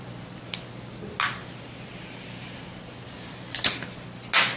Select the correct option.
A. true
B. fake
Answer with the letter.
A